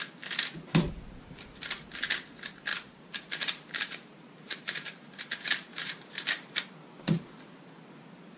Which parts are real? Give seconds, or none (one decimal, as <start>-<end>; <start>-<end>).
0.0-2.7; 6.6-8.4